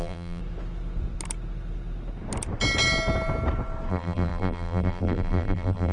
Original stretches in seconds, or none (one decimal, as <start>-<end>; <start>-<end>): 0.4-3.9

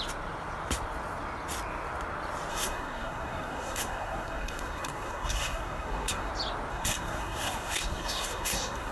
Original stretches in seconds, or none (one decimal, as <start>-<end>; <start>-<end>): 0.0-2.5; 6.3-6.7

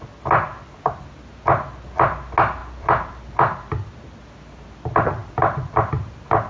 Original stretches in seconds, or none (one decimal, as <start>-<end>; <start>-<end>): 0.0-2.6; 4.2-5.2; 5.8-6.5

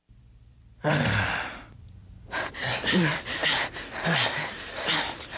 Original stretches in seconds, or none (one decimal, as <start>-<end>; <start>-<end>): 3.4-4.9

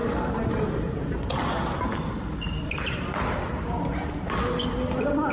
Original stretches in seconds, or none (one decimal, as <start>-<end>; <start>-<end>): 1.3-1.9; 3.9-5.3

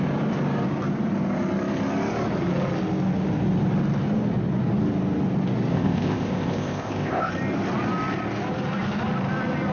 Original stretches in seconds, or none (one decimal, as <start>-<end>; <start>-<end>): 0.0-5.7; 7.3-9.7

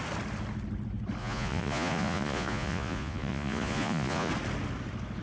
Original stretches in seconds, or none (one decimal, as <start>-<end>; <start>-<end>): 0.0-1.2; 4.3-5.2